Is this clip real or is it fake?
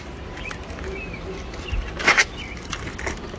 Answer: real